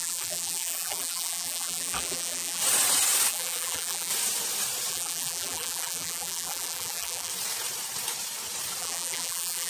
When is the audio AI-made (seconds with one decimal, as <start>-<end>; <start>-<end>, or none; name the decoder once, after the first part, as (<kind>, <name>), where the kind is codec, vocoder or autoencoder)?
0.0-2.6 (vocoder, BigVGAN v2); 3.3-4.1; 4.9-7.3; 8.8-9.7